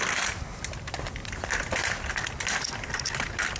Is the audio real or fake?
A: real